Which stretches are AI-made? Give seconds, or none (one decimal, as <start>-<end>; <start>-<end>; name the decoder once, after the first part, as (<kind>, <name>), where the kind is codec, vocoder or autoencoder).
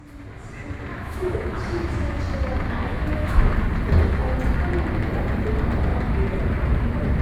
0.9-2.2 (autoencoder, DAC-VAE); 2.9-3.5